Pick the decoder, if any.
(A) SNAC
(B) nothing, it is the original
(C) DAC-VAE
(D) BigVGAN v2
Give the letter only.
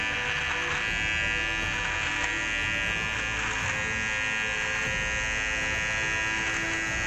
B